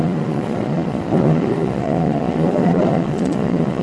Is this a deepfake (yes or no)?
yes